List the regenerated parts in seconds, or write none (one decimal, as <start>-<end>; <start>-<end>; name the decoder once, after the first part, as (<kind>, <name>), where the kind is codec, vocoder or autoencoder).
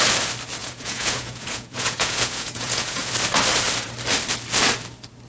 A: 0.6-3.1 (vocoder, Vocos)